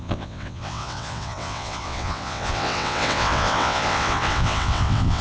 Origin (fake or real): fake